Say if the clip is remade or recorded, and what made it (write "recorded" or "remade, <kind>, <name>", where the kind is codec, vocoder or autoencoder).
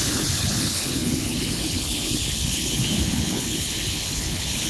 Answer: remade, codec, HILCodec